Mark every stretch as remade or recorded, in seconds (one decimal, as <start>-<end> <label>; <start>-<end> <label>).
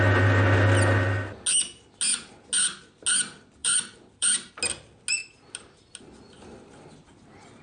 0.0-3.6 recorded; 3.6-4.5 remade; 4.5-7.6 recorded